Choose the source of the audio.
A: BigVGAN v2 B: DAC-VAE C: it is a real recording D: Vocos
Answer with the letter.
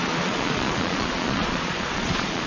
D